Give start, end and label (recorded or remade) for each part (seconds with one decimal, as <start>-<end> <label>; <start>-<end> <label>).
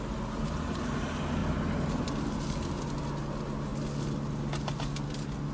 0.0-5.5 recorded